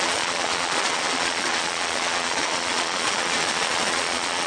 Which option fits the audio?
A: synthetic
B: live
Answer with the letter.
A